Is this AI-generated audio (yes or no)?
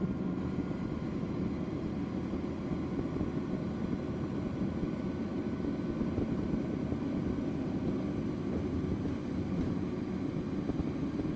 no